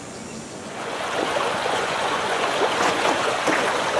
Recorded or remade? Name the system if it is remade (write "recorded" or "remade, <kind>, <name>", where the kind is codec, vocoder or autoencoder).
remade, vocoder, Vocos